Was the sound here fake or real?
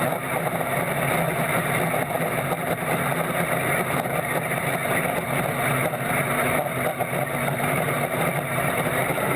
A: real